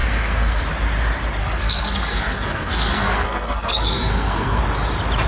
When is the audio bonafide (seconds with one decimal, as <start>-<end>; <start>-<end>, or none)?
0.6-1.4; 4.6-5.3